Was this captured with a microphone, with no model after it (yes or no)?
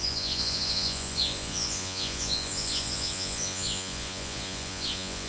no